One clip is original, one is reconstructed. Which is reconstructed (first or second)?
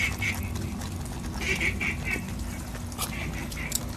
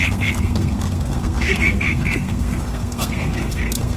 second